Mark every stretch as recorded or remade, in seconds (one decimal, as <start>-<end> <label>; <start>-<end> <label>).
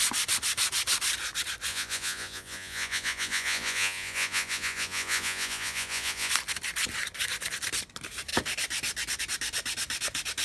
0.0-1.7 recorded; 1.7-6.3 remade; 6.3-10.4 recorded